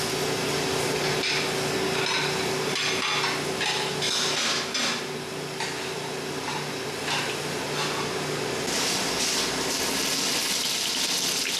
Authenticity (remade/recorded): recorded